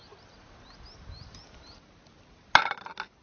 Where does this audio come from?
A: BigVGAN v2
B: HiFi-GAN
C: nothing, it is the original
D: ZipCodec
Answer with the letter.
C